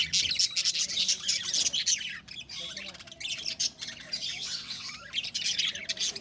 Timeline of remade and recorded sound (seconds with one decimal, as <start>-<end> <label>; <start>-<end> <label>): 0.0-4.3 recorded; 4.3-4.9 remade; 4.9-6.2 recorded